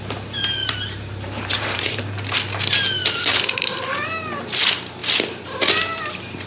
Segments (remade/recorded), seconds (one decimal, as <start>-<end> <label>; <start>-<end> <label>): 0.0-0.6 recorded; 0.6-2.0 remade; 2.0-6.5 recorded